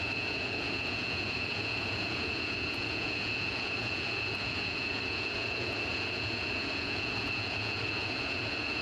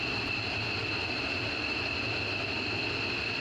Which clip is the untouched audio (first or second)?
second